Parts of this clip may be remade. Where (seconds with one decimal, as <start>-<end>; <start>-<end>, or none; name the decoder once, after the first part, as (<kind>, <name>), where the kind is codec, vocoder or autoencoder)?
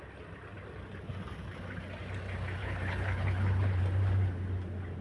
2.6-3.8 (codec, HILCodec)